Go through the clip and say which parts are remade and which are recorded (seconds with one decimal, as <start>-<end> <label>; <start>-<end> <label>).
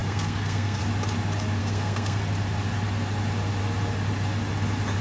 0.0-0.8 remade; 0.8-1.6 recorded; 1.6-2.2 remade; 2.2-5.0 recorded